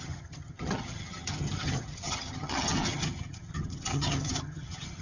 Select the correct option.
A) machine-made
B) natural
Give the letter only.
A